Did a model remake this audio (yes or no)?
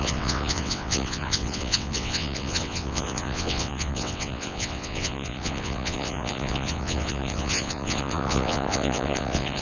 yes